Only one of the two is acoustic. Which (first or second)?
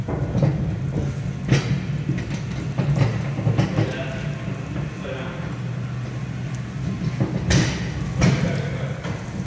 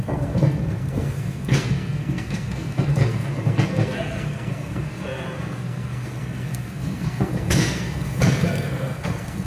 first